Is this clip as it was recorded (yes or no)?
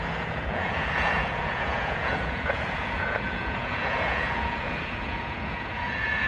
no